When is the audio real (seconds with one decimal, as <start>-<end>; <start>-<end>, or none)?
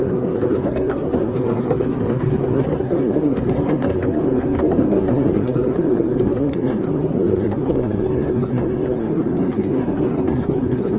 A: none